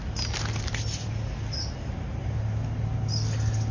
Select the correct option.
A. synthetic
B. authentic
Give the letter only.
B